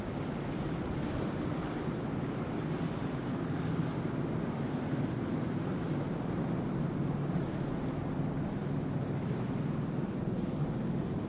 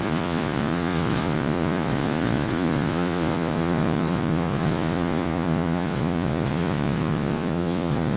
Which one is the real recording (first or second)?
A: first